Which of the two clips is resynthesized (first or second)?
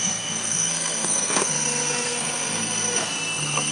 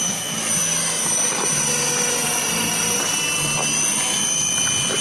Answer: first